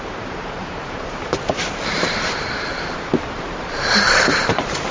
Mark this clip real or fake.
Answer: fake